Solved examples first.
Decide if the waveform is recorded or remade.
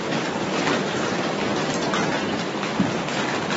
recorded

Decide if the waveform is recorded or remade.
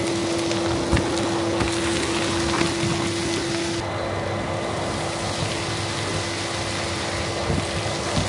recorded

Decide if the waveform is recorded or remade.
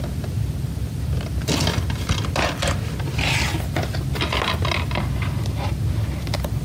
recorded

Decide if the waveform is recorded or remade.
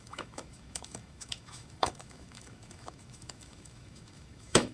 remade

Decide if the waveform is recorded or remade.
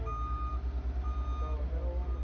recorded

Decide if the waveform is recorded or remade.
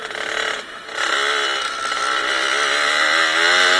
recorded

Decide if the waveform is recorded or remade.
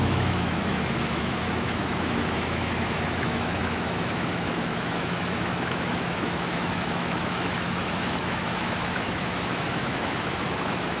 remade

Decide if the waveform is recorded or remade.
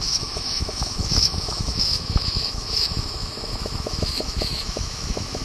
remade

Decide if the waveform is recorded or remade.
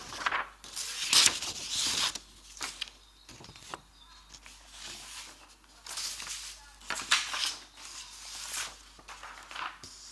recorded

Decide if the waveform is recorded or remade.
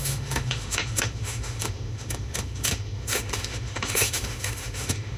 remade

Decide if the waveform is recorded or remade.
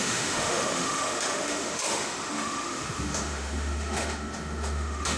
remade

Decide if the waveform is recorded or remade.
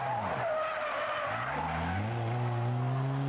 recorded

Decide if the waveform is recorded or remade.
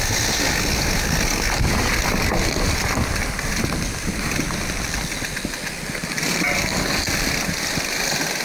recorded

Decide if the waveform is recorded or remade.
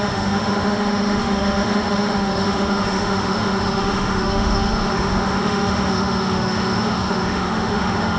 remade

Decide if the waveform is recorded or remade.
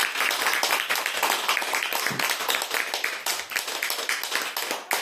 recorded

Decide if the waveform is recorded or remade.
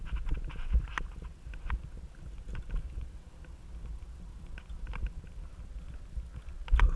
recorded